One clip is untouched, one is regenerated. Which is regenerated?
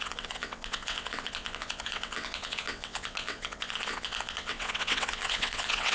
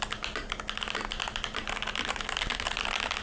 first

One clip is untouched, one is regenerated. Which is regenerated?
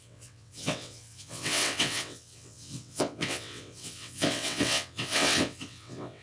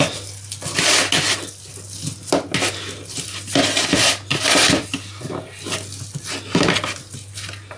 first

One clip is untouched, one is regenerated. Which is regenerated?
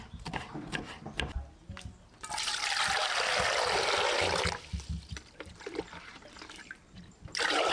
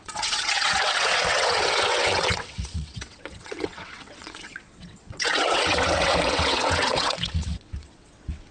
second